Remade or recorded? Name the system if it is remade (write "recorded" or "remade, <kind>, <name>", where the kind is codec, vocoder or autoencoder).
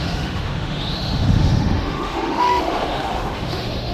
remade, autoencoder, DAC-VAE